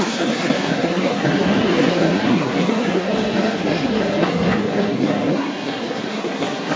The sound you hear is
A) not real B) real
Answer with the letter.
A